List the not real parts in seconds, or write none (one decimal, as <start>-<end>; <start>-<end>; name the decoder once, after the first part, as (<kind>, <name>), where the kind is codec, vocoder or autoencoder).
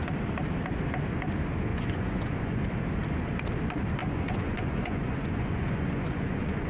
1.7-2.7 (vocoder, Vocos); 4.0-6.7